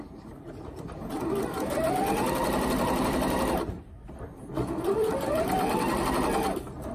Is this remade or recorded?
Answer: remade